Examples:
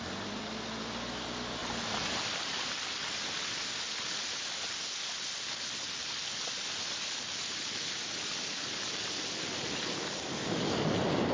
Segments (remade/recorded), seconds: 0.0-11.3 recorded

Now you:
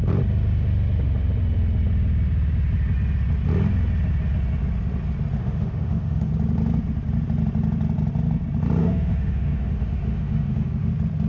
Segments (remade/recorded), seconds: 0.0-5.4 recorded; 5.4-6.3 remade; 6.3-8.8 recorded; 8.8-10.9 remade; 10.9-11.3 recorded

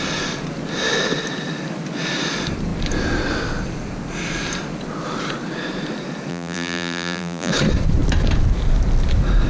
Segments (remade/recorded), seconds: 0.0-6.3 recorded; 6.3-7.5 remade; 7.5-9.5 recorded

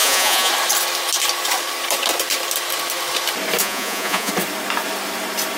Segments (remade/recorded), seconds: 0.0-0.5 remade; 0.5-3.6 recorded; 3.6-4.3 remade; 4.3-5.6 recorded

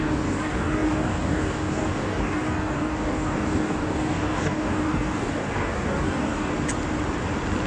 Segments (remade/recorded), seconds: 0.0-6.5 remade; 6.5-7.7 recorded

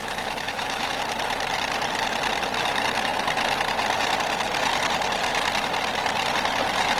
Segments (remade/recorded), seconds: 0.0-1.0 remade; 1.0-7.0 recorded

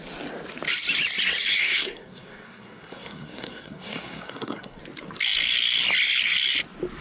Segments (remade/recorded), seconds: 0.0-1.5 recorded; 1.5-4.8 remade; 4.8-7.0 recorded